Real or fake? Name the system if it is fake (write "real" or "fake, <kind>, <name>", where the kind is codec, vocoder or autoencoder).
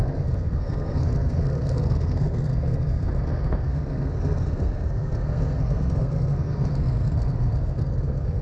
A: fake, codec, SNAC